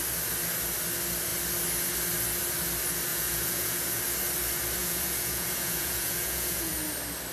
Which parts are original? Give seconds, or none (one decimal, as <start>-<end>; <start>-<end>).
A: 0.0-3.1; 4.0-4.8; 6.7-7.3